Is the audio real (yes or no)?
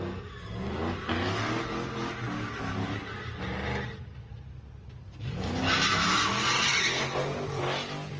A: yes